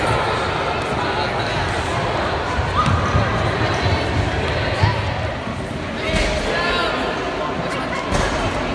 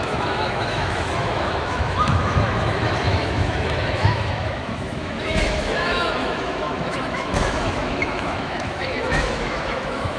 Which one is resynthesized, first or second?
second